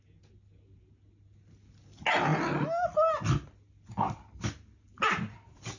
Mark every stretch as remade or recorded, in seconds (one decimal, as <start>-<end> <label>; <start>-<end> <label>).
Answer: 0.0-5.8 recorded